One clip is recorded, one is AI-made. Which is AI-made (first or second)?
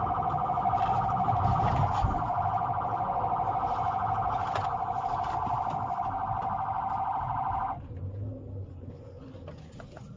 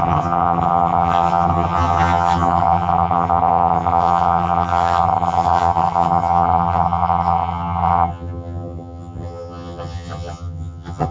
second